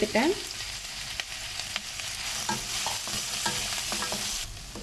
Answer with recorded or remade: recorded